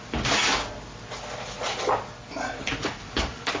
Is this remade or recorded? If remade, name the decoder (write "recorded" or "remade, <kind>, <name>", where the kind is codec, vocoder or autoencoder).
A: recorded